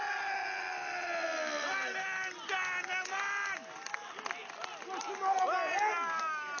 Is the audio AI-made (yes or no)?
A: no